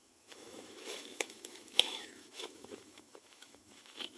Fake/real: fake